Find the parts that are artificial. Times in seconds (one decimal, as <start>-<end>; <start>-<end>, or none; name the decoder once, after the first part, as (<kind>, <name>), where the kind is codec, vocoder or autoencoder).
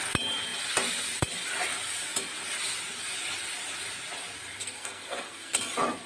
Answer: 4.6-5.6 (codec, SNAC)